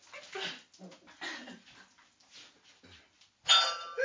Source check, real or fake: real